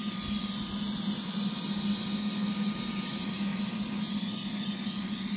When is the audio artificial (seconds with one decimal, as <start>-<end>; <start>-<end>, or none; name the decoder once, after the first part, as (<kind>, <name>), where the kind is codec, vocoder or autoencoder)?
none